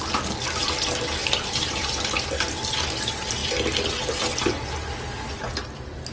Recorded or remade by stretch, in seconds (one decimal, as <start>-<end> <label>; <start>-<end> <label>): 0.0-1.2 recorded; 1.2-2.0 remade; 2.0-6.1 recorded